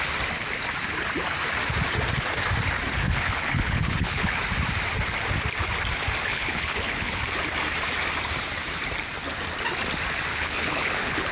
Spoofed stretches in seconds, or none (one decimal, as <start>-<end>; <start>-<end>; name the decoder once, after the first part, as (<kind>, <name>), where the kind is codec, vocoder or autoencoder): 3.0-4.4 (codec, HILCodec); 6.3-7.2; 10.3-11.3